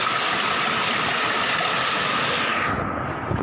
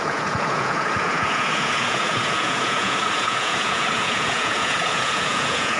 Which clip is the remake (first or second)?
second